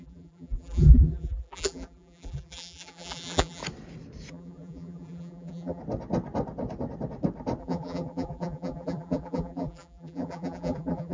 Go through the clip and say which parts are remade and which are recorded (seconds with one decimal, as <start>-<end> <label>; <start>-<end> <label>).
0.0-3.6 remade; 3.6-4.3 recorded; 4.3-5.8 remade; 5.8-7.6 recorded; 7.6-11.1 remade